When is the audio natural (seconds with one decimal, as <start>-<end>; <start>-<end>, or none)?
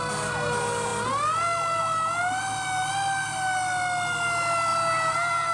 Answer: 0.0-4.7